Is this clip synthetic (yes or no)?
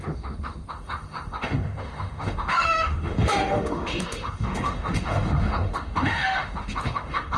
yes